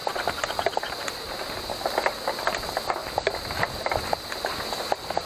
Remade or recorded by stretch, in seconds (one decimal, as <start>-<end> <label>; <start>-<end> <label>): 0.0-5.3 recorded